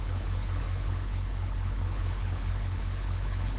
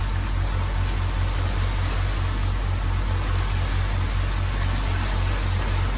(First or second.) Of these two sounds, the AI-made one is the first